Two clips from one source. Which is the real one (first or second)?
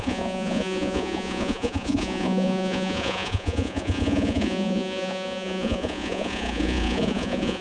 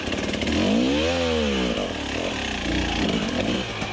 second